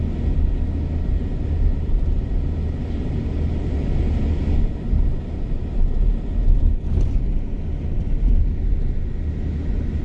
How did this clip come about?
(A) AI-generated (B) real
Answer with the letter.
B